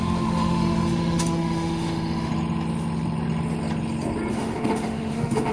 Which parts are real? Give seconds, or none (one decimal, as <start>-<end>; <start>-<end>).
2.3-4.3